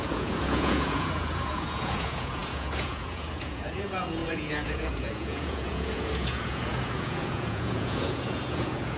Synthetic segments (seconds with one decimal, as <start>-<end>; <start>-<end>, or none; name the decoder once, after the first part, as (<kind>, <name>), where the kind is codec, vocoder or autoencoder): 0.0-9.0 (vocoder, Vocos)